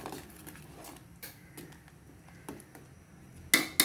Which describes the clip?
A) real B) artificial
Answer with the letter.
A